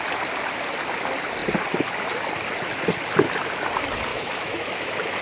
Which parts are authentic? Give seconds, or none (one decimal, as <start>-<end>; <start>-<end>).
0.0-4.1